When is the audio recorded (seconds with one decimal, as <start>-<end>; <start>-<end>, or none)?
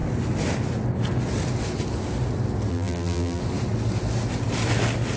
0.0-2.7; 3.4-5.2